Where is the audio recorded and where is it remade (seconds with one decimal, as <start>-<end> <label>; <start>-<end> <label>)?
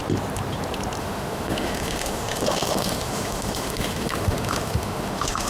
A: 0.0-1.0 recorded; 1.0-5.5 remade